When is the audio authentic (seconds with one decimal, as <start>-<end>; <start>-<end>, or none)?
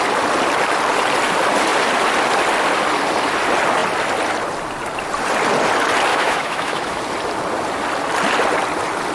0.0-6.1; 7.0-9.1